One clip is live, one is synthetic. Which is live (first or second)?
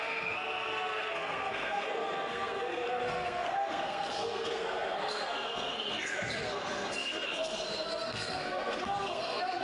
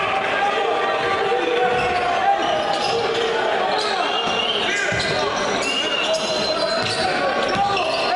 second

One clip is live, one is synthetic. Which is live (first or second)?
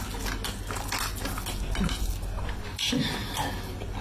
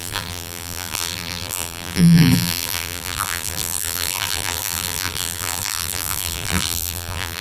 first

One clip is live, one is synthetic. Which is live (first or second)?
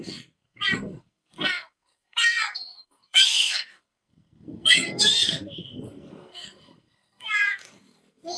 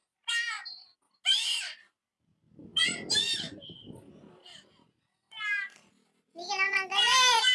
second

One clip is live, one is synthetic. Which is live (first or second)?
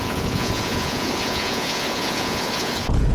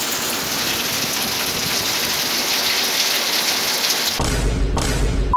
second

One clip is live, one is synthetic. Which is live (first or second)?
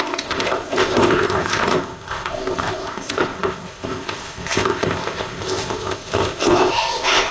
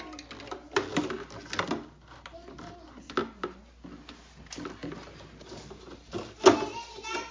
second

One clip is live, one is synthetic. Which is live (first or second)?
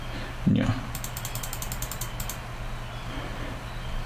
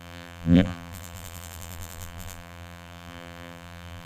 first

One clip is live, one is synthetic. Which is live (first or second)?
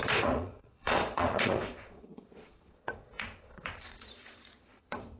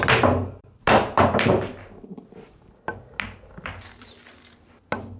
second